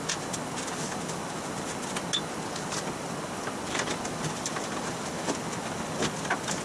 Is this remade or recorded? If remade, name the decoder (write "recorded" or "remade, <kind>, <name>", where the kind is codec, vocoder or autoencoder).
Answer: recorded